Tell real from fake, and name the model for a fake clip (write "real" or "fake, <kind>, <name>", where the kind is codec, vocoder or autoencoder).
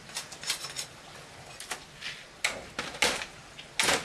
real